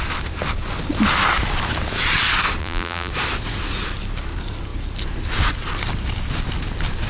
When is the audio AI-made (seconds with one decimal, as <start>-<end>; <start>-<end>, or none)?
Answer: 2.6-3.1